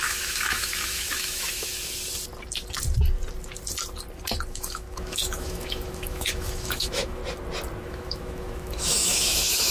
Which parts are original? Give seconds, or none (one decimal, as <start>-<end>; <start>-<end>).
1.7-4.5; 7.2-7.8